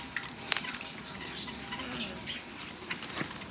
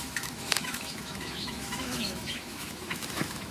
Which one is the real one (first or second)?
first